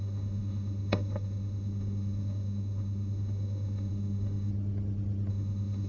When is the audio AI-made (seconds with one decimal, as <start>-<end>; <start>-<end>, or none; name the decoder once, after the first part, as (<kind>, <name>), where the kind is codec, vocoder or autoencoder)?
0.0-4.5 (autoencoder, DAC-VAE); 5.3-5.9